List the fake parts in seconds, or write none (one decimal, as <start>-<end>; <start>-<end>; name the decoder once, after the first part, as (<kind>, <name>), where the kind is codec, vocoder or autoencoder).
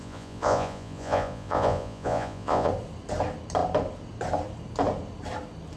0.0-2.7 (vocoder, Vocos)